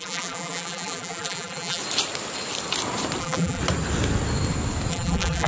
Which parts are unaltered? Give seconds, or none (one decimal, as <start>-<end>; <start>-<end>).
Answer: 1.8-3.2; 3.6-4.9